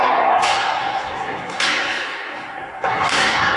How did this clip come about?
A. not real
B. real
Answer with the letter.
A